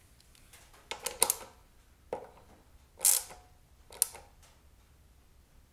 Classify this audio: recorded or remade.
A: recorded